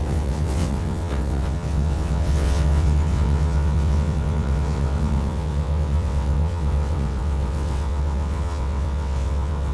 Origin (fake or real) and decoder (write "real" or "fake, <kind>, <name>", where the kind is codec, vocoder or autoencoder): fake, vocoder, WaveNeXt